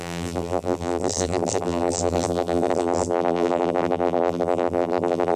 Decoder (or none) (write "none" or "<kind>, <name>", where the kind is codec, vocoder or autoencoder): vocoder, BigVGAN v2